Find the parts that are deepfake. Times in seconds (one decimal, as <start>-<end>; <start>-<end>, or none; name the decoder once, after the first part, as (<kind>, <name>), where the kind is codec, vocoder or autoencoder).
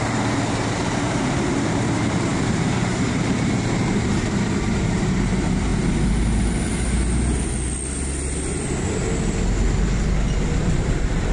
0.0-5.7 (vocoder, BigVGAN v2); 10.6-11.3